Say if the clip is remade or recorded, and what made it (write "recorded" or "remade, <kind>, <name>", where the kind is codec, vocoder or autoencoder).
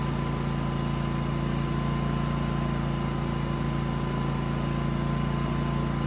recorded